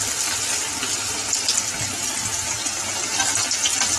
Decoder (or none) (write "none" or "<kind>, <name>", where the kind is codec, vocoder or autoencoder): none